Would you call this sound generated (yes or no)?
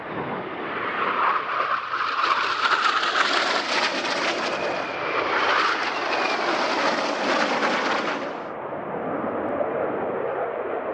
no